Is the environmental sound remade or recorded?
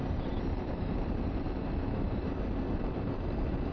remade